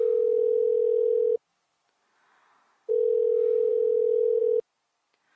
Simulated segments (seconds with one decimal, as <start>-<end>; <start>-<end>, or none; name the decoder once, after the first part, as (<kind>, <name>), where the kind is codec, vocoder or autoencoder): 3.7-4.4 (codec, DAC)